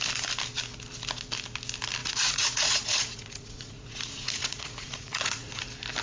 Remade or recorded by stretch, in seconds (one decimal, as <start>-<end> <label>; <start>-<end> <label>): 0.0-2.0 recorded; 2.0-5.6 remade; 5.6-6.0 recorded